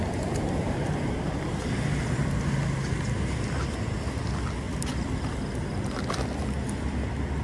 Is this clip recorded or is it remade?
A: recorded